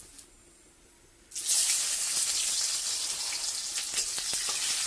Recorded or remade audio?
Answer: recorded